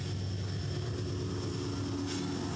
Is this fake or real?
real